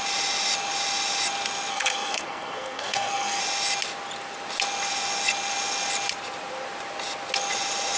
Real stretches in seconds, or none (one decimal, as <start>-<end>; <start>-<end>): 0.0-1.7; 3.4-8.0